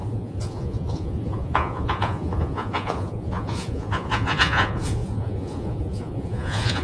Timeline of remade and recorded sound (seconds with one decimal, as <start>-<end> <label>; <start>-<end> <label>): 0.0-6.8 remade